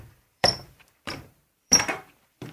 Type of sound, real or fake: fake